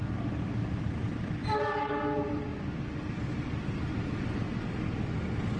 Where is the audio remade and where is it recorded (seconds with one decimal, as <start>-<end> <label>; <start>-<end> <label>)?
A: 0.0-1.4 recorded; 1.4-1.9 remade; 1.9-5.6 recorded